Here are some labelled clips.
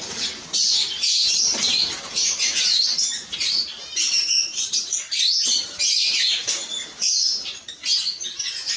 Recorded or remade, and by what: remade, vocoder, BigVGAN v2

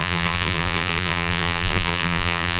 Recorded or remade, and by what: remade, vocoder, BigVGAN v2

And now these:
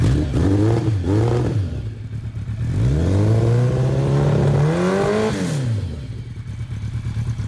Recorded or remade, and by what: recorded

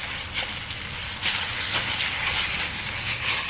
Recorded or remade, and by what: recorded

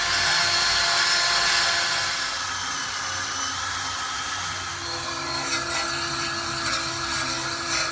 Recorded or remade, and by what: recorded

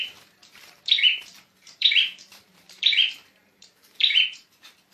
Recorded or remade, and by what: remade, vocoder, BigVGAN v2